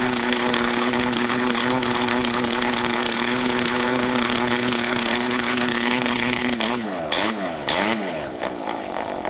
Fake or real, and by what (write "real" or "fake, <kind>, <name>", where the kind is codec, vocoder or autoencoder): fake, codec, HILCodec